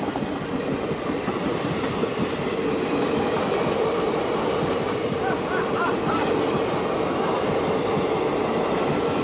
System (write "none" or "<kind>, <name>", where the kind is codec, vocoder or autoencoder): none